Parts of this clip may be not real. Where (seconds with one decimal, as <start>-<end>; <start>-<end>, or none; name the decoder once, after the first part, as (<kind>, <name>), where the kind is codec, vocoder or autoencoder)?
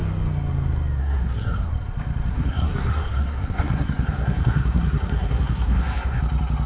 1.0-1.7 (codec, SNAC); 2.3-6.2